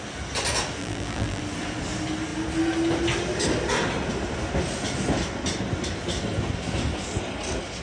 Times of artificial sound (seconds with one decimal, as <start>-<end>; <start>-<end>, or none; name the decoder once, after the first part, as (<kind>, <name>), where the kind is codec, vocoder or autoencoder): 0.8-1.4 (vocoder, BigVGAN v2)